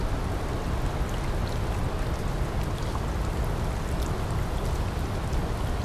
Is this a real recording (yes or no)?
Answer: yes